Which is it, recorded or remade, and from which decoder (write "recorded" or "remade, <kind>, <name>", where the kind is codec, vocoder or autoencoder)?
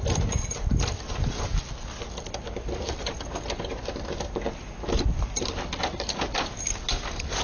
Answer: recorded